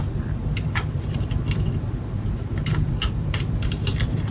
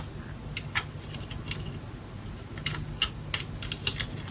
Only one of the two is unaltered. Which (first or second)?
second